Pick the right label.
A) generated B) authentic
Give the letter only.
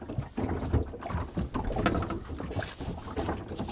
B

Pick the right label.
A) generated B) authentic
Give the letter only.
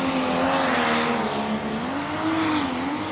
B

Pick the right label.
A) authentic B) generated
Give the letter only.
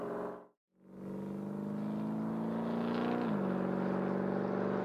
A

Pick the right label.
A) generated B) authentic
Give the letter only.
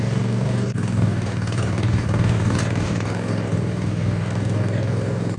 A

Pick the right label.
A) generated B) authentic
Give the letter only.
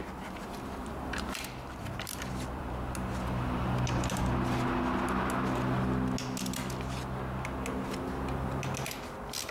B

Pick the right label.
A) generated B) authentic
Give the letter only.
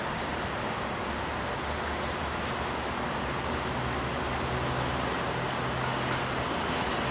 B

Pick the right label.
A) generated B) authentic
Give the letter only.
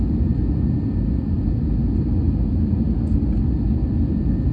B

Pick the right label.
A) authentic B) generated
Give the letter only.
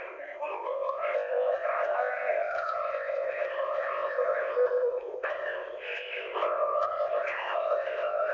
B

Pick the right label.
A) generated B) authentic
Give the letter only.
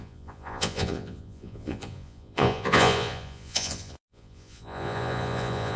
A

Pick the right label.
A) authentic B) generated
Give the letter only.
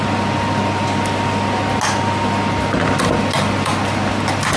A